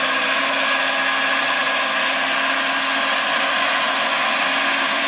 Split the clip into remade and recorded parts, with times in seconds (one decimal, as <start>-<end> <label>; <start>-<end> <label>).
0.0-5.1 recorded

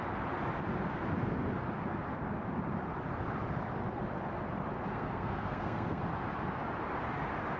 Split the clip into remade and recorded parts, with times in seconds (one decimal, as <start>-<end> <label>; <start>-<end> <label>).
0.0-4.9 recorded; 4.9-6.0 remade; 6.0-7.6 recorded

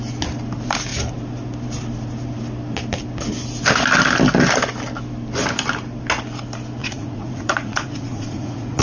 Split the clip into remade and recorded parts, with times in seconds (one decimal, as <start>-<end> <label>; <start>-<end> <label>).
0.0-6.8 recorded; 6.8-8.8 remade

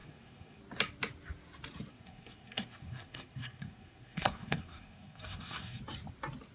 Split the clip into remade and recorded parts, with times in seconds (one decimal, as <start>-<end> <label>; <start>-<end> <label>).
0.0-0.6 remade; 0.6-1.9 recorded; 1.9-5.8 remade; 5.8-6.5 recorded